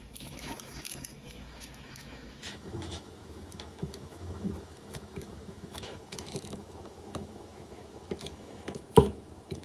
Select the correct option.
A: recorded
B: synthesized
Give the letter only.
B